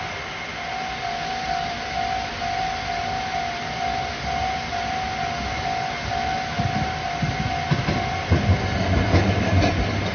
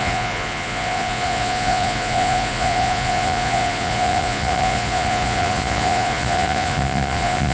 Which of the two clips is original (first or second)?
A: first